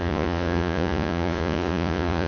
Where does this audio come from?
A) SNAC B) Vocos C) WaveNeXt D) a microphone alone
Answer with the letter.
B